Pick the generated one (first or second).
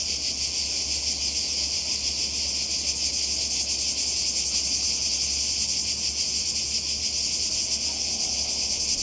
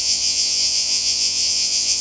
second